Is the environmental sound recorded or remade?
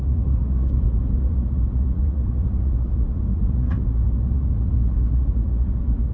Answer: remade